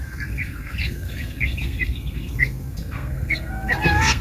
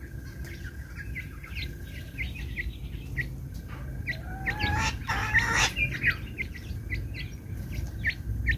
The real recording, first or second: second